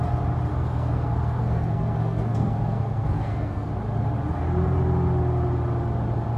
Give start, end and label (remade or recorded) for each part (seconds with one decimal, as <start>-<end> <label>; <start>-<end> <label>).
0.0-0.5 recorded; 0.5-3.7 remade; 3.7-6.4 recorded